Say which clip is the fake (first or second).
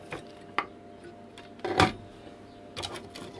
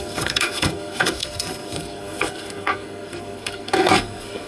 second